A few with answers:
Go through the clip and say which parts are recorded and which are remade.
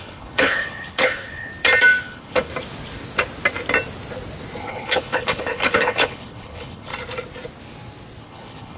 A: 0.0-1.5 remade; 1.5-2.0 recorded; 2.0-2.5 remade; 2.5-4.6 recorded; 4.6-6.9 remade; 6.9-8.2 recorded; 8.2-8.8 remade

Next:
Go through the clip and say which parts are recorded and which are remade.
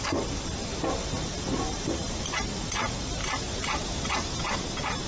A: 0.0-0.7 recorded; 0.7-2.5 remade; 2.5-3.2 recorded; 3.2-4.4 remade; 4.4-5.1 recorded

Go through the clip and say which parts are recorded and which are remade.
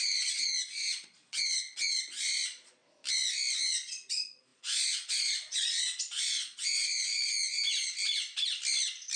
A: 0.0-2.8 remade; 2.8-3.7 recorded; 3.7-7.1 remade; 7.1-9.2 recorded